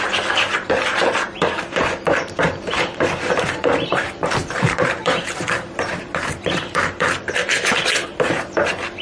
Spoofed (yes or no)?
yes